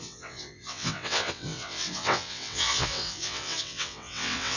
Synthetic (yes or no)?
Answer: yes